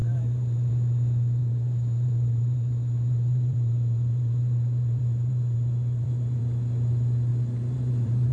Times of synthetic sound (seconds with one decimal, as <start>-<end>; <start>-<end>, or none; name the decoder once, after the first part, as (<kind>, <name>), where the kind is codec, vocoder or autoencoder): 0.0-0.7 (vocoder, BigVGAN v2); 1.4-6.4; 7.3-8.3